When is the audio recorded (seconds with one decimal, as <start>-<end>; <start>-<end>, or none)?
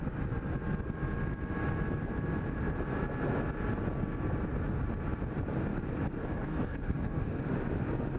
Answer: 0.0-6.2; 7.4-8.2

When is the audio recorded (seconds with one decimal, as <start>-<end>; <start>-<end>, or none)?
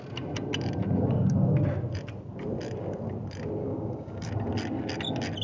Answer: 0.0-3.6; 4.3-5.4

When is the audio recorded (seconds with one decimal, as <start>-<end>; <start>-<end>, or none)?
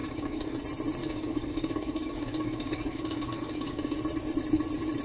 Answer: 0.6-1.0; 4.0-5.0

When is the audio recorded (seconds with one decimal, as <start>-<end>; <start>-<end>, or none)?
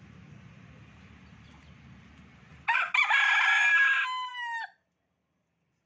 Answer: 0.0-5.9